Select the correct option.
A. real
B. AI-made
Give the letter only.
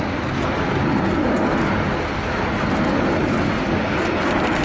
A